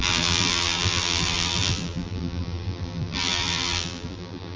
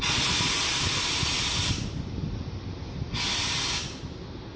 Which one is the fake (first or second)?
first